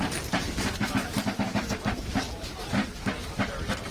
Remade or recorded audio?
remade